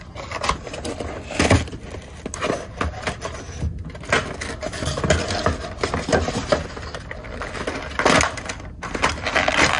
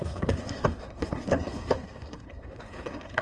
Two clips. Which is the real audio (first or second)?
first